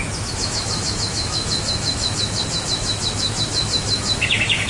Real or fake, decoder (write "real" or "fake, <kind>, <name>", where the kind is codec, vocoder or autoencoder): fake, autoencoder, DAC-VAE